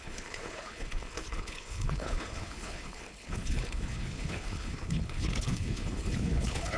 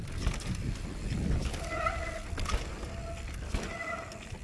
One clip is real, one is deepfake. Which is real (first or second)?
second